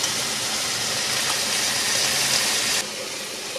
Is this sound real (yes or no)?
yes